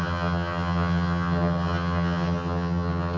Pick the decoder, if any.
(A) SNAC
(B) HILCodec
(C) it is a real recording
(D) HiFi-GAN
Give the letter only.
D